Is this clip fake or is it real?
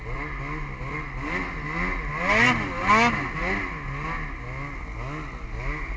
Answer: real